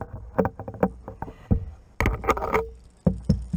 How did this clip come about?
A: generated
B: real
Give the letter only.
B